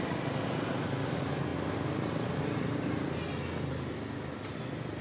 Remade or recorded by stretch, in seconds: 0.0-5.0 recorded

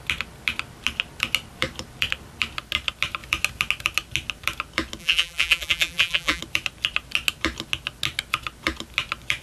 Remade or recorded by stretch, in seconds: 0.0-5.0 recorded; 5.0-6.4 remade; 6.4-9.4 recorded

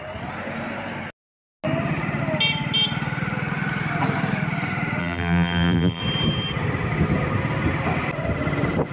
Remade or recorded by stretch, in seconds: 0.0-5.0 recorded; 5.0-6.0 remade; 6.0-8.9 recorded

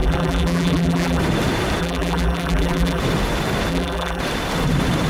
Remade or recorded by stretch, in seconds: 0.0-1.2 remade; 1.2-1.8 recorded; 1.8-3.0 remade; 3.0-3.7 recorded; 3.7-4.2 remade; 4.2-5.1 recorded

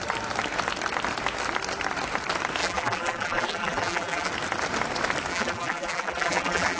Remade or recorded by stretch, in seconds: 0.0-2.6 recorded; 2.6-4.3 remade; 4.3-5.3 recorded; 5.3-6.8 remade

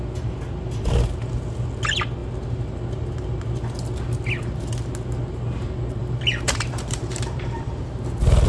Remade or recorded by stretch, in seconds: 0.0-6.0 recorded; 6.0-7.7 remade; 7.7-8.5 recorded